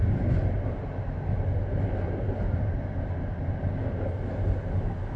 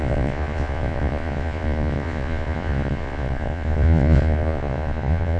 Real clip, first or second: first